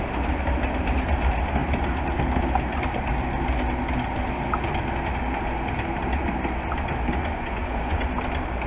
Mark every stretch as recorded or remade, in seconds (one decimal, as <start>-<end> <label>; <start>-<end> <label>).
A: 0.0-7.2 recorded; 7.2-8.1 remade; 8.1-8.7 recorded